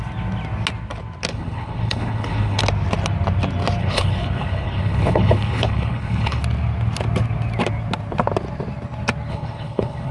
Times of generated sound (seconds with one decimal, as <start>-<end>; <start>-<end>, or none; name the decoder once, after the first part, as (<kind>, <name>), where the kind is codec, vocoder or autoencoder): 1.3-2.6 (codec, HILCodec); 3.8-6.4; 9.3-10.1